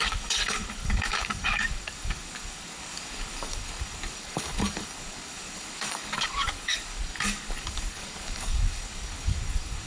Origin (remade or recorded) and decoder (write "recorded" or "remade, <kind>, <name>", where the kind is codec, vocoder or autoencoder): remade, codec, DAC